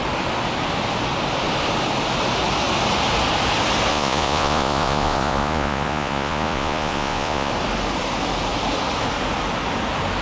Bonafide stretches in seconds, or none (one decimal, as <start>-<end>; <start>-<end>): 0.0-3.9; 7.5-10.2